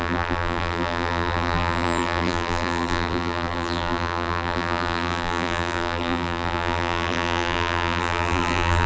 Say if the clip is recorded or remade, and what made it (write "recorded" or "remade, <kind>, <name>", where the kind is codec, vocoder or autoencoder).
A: remade, vocoder, BigVGAN v2